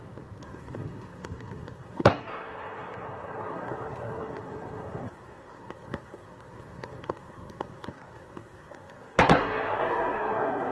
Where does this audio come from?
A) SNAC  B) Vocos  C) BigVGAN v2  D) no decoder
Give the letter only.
A